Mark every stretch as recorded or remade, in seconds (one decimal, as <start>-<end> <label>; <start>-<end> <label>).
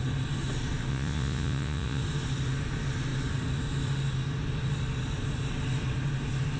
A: 0.0-0.9 recorded; 0.9-2.0 remade; 2.0-6.6 recorded